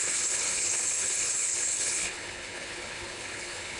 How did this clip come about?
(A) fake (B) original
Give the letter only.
A